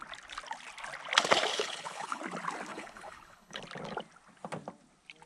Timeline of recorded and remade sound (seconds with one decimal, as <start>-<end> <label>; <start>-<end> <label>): 0.0-1.5 recorded; 1.5-2.2 remade; 2.2-2.7 recorded; 2.7-3.6 remade; 3.6-5.3 recorded